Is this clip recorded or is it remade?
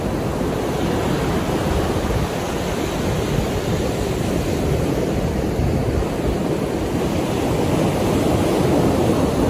recorded